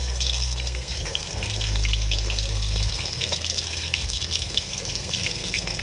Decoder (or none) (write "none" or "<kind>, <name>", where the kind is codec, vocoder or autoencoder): codec, SNAC